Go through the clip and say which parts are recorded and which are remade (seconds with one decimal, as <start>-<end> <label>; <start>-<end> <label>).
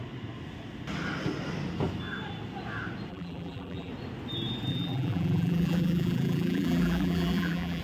0.0-3.1 recorded; 3.1-3.9 remade; 3.9-4.7 recorded; 4.7-7.8 remade